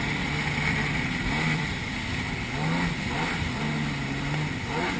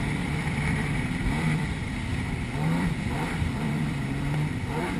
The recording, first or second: first